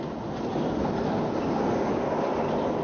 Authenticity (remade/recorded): recorded